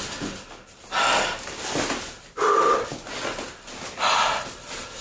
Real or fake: real